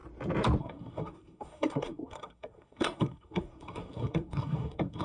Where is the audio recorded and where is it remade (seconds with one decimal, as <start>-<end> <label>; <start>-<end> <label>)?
0.0-0.6 recorded; 0.6-5.0 remade